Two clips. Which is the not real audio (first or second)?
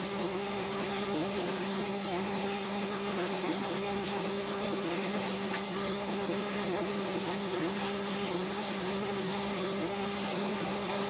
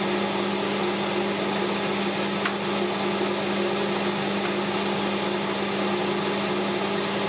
first